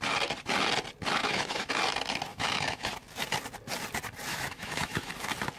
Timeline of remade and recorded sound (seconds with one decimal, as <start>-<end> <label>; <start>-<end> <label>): 0.0-1.2 recorded; 1.2-1.7 remade; 1.7-2.3 recorded; 2.3-2.9 remade; 2.9-4.3 recorded; 4.3-5.1 remade; 5.1-5.6 recorded